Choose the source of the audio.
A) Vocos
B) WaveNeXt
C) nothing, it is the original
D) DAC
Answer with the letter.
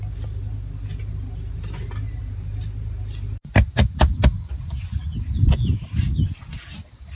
C